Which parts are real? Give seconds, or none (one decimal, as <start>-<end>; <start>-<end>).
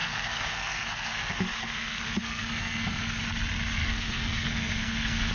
3.2-3.8